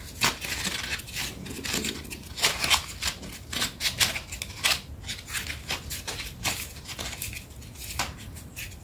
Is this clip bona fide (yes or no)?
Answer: yes